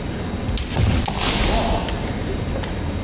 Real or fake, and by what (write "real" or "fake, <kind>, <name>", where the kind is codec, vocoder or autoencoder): real